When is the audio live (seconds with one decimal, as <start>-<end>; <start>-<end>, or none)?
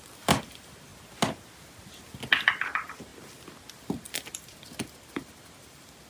0.9-2.5; 3.1-3.8